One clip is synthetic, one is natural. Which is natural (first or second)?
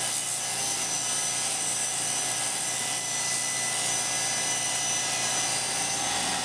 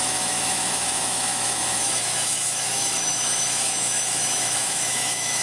first